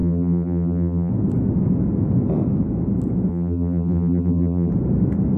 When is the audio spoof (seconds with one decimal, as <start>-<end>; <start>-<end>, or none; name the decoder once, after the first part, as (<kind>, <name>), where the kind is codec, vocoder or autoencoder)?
0.0-1.1 (vocoder, BigVGAN v2); 3.3-4.7